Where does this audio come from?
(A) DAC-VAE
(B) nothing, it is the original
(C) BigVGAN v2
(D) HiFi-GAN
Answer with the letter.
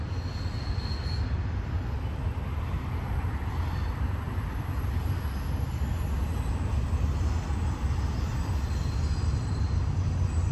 B